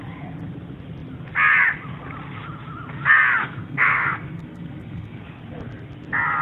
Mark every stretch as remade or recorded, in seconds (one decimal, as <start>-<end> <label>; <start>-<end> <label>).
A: 0.0-3.4 recorded; 3.4-5.2 remade; 5.2-6.4 recorded